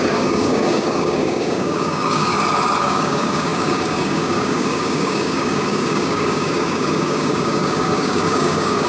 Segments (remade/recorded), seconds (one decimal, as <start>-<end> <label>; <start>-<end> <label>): 0.0-2.3 remade; 2.3-2.8 recorded; 2.8-8.9 remade